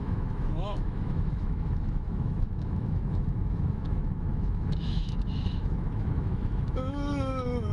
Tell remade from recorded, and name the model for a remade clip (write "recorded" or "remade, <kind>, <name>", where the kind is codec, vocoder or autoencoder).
remade, autoencoder, DAC-VAE